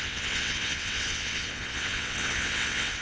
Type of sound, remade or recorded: remade